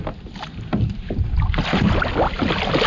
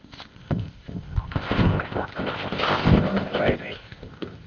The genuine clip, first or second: first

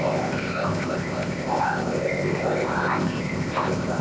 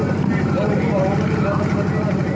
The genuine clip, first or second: second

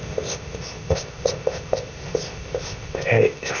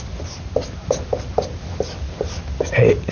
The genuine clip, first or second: second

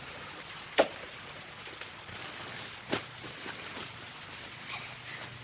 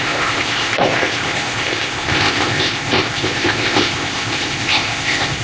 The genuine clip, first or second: first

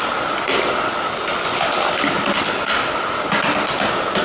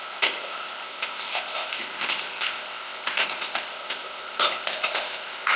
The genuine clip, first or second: first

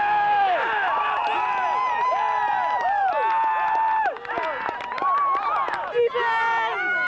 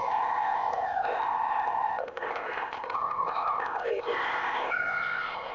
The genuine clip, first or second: first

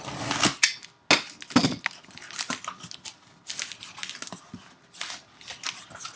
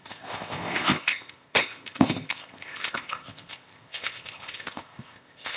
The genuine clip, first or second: first